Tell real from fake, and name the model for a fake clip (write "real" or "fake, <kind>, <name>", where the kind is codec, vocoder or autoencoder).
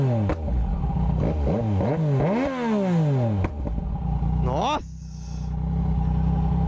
real